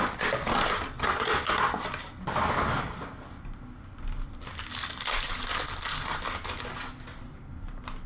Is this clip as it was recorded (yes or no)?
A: yes